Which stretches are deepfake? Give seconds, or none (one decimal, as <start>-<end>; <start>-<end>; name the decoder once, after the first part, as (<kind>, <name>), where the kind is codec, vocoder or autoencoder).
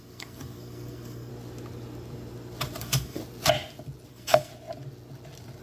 0.0-1.3 (codec, SNAC); 2.8-3.2; 4.1-4.5